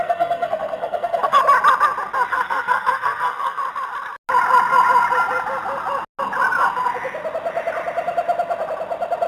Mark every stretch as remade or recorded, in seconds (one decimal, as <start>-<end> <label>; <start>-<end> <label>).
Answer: 0.0-1.4 remade; 1.4-2.3 recorded; 2.3-3.6 remade; 3.6-9.3 recorded